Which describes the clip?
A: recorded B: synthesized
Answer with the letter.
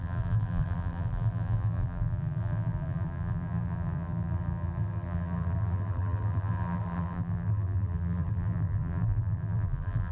B